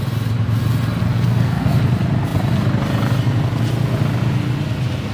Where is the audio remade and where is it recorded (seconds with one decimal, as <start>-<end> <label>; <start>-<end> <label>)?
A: 0.0-1.1 recorded; 1.1-1.8 remade; 1.8-5.1 recorded